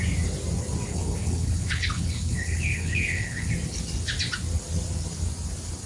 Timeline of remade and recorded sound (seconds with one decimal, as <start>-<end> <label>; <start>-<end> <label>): 0.0-0.9 recorded; 0.9-3.5 remade; 3.5-5.9 recorded